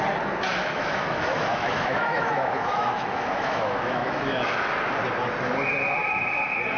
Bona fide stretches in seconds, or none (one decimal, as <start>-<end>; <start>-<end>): 0.0-0.6; 4.7-6.8